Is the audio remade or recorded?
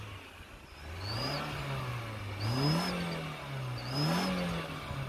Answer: recorded